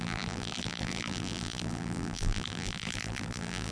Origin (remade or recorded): remade